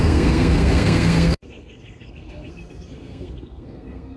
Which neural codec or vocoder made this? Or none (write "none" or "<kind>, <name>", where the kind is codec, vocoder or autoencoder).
codec, SNAC